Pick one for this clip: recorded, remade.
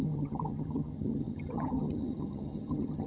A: remade